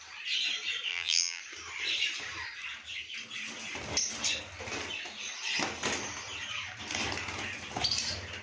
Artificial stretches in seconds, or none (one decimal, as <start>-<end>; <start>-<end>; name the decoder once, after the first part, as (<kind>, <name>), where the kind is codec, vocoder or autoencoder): 0.9-1.4 (vocoder, BigVGAN v2)